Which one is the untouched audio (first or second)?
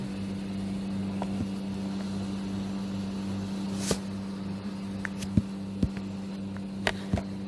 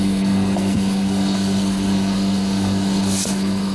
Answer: first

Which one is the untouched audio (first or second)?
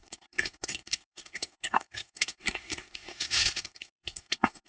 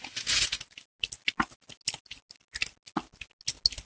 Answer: second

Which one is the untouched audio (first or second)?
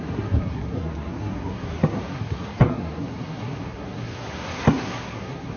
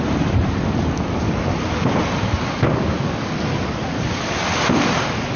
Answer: second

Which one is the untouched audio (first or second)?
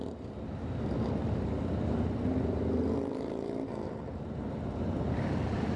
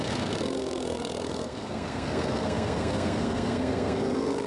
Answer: first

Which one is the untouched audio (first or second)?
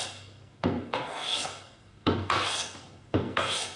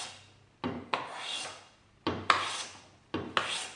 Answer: second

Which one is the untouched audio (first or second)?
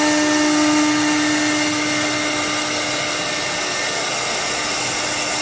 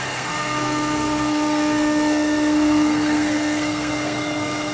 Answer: first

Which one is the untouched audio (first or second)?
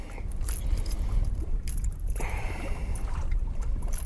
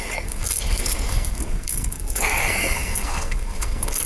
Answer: first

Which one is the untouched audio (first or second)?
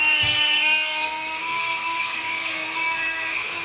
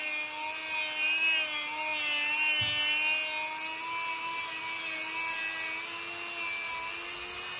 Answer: second